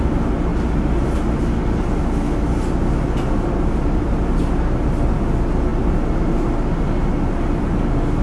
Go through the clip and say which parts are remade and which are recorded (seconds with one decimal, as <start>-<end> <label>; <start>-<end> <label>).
0.0-8.2 recorded